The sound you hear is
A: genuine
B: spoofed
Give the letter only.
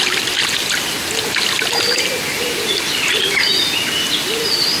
A